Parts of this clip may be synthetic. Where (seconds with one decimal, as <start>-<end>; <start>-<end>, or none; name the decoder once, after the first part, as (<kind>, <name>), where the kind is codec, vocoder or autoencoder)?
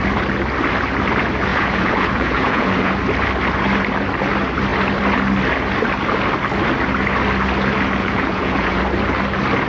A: 1.5-2.9 (vocoder, Vocos); 8.0-8.8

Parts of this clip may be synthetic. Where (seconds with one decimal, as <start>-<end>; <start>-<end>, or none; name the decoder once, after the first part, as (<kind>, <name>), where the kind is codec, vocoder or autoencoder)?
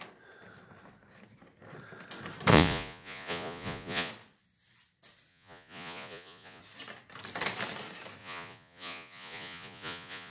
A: 2.5-4.1 (vocoder, Vocos); 5.3-6.6; 8.2-10.3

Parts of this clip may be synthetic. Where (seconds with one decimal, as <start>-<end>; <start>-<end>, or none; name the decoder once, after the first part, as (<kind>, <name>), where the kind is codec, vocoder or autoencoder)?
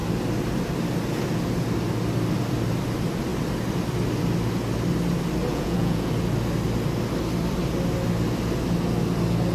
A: 5.5-6.1 (vocoder, Vocos)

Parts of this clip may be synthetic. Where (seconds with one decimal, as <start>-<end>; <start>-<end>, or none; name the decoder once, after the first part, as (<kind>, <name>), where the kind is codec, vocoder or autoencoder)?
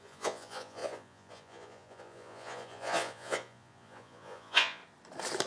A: 0.0-4.8 (vocoder, Vocos)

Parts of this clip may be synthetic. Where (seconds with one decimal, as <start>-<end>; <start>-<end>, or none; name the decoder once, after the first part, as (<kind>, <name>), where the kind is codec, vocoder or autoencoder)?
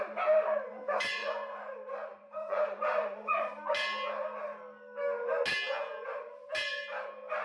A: 0.7-1.6 (vocoder, Vocos); 2.1-3.5